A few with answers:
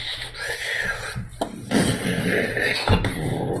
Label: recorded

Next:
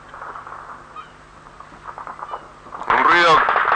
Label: recorded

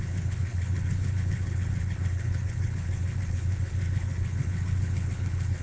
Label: remade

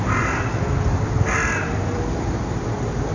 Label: recorded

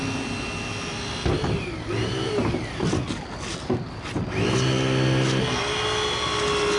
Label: recorded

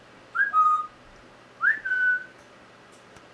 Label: recorded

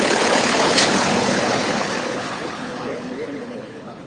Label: remade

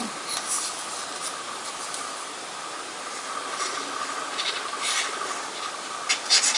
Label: recorded